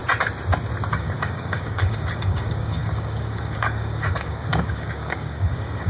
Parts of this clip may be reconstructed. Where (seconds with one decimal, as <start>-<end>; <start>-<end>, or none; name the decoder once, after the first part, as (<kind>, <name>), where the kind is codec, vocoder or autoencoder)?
0.9-5.9 (codec, DAC)

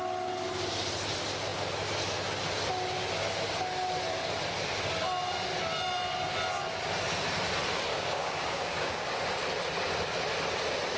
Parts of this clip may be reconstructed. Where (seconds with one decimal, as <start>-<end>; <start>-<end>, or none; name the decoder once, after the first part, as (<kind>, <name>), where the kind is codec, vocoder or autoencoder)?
7.9-9.1 (codec, DAC)

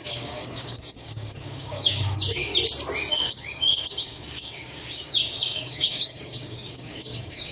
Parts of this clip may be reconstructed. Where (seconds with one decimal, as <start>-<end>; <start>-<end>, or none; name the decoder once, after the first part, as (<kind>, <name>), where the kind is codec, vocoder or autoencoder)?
0.0-2.5 (codec, DAC); 3.1-7.5

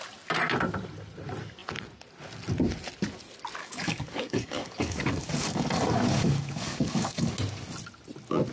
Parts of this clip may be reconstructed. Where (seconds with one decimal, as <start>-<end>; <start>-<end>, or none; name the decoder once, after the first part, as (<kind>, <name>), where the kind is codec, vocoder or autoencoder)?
3.6-7.3 (codec, DAC)

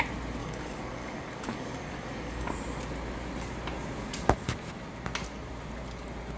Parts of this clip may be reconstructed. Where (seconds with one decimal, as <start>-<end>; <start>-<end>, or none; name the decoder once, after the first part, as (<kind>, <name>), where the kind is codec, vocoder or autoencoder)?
0.4-2.5 (codec, DAC)